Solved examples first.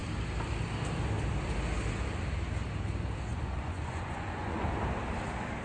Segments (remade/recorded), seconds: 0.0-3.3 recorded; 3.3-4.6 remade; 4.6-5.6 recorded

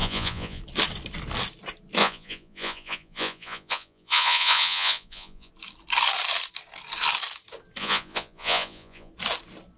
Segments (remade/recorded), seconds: 0.0-0.6 remade; 0.6-2.0 recorded; 2.0-5.5 remade; 5.5-7.8 recorded; 7.8-9.1 remade; 9.1-9.8 recorded

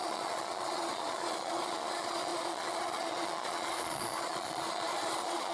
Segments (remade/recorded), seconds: 0.0-5.5 remade

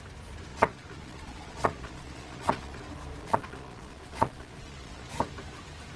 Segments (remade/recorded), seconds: 0.0-0.5 recorded; 0.5-2.8 remade; 2.8-3.2 recorded; 3.2-5.1 remade; 5.1-6.0 recorded

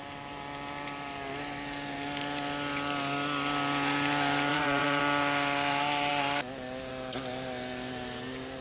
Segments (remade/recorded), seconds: 0.0-4.5 recorded; 4.5-5.0 remade; 5.0-8.6 recorded